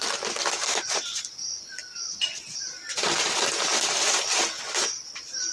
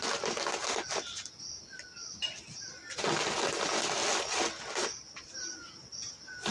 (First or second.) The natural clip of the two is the second